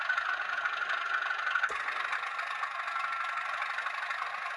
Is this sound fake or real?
real